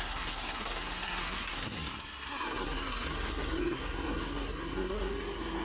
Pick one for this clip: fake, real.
fake